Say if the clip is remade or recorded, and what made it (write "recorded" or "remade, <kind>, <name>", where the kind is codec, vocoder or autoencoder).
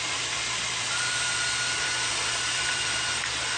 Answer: remade, vocoder, BigVGAN v2